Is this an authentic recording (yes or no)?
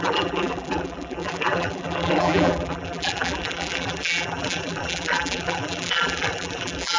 no